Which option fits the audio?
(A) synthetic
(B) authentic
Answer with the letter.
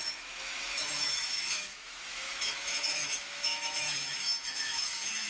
A